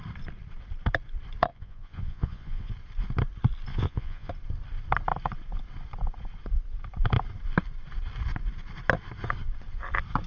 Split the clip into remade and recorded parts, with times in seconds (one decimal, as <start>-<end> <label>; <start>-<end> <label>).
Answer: 0.0-1.5 recorded; 1.5-2.7 remade; 2.7-3.7 recorded; 3.7-4.3 remade; 4.3-10.3 recorded